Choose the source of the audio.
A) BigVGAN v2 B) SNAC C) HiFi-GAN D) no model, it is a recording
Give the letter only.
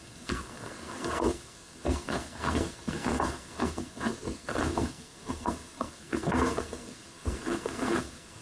B